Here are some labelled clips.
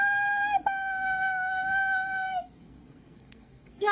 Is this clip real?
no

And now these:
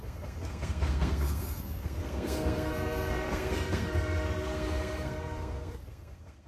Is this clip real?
no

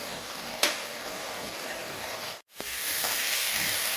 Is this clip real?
no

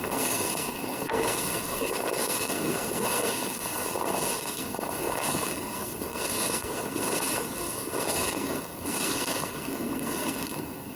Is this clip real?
no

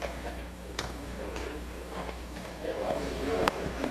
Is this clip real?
no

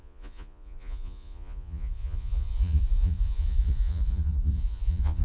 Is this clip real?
no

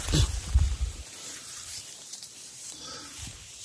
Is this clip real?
no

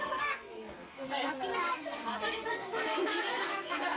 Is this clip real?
no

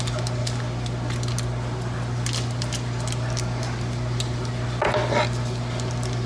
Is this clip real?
yes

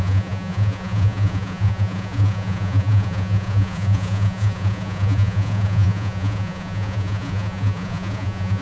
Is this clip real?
no